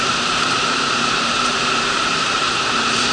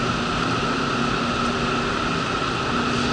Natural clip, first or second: second